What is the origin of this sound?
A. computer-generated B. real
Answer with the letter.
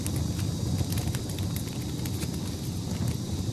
B